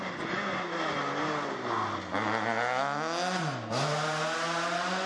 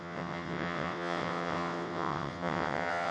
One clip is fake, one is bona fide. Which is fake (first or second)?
second